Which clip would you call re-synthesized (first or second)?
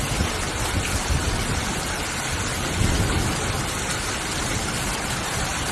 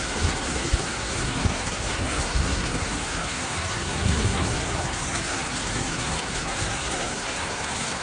second